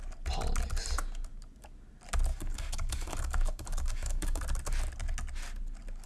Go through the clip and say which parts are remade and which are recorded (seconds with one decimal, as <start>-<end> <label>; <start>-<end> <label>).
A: 0.0-2.3 recorded; 2.3-4.4 remade; 4.4-6.1 recorded